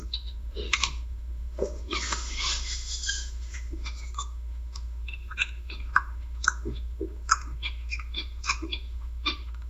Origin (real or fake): fake